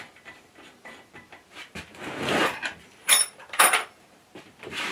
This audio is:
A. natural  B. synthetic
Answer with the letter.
B